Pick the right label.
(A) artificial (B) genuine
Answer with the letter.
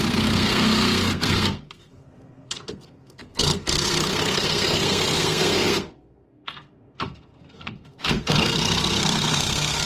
A